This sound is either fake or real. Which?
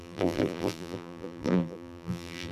fake